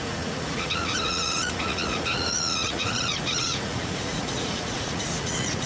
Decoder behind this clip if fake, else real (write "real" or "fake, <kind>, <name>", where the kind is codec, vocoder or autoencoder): fake, vocoder, Vocos